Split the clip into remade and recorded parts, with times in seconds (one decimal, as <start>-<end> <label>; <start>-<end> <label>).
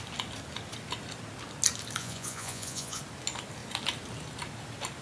0.0-2.0 recorded; 2.0-3.0 remade; 3.0-5.0 recorded